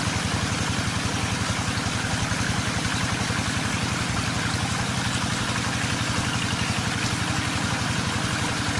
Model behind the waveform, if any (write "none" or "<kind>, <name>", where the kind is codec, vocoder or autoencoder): none